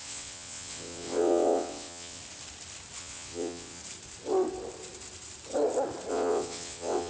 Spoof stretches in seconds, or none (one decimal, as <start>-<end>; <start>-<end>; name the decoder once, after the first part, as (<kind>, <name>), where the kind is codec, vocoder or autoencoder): 0.0-2.2 (vocoder, WaveNeXt); 3.0-3.8; 6.1-7.1